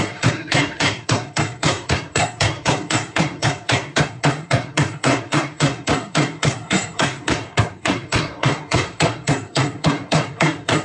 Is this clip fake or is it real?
fake